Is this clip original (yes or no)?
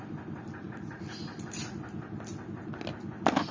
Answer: yes